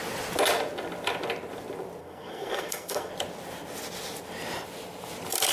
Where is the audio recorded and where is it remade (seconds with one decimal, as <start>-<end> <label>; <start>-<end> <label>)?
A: 0.0-2.0 recorded; 2.0-3.1 remade; 3.1-5.5 recorded